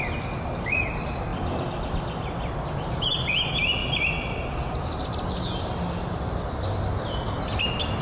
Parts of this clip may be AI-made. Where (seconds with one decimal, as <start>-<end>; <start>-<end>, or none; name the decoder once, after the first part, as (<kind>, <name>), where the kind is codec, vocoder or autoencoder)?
none